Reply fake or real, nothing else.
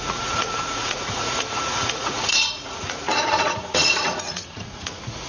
fake